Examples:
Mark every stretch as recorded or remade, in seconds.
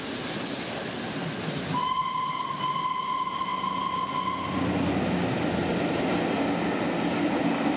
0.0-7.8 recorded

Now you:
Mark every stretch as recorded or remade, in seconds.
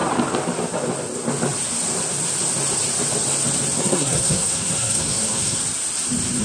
0.0-3.8 recorded; 3.8-5.6 remade; 5.6-6.4 recorded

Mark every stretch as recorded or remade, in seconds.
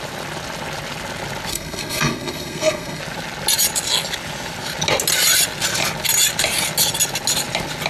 0.0-1.5 recorded; 1.5-3.0 remade; 3.0-7.9 recorded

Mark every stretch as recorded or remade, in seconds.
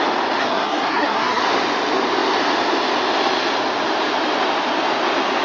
0.0-0.4 recorded; 0.4-1.4 remade; 1.4-5.4 recorded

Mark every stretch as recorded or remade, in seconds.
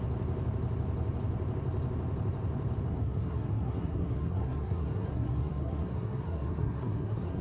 0.0-2.9 recorded; 2.9-7.4 remade